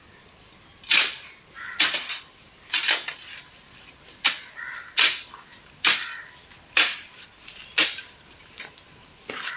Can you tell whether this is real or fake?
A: fake